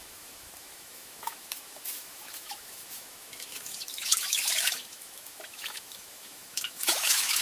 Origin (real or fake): fake